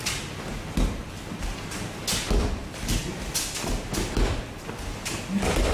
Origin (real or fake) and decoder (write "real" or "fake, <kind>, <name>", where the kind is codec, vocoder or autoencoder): fake, vocoder, BigVGAN v2